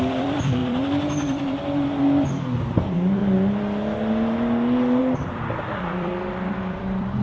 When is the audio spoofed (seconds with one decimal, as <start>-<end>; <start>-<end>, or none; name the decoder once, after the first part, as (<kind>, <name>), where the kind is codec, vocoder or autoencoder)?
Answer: 0.0-3.2 (vocoder, BigVGAN v2); 5.0-7.2